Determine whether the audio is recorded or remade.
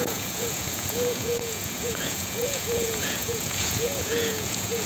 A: remade